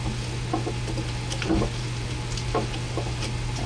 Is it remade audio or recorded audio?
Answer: recorded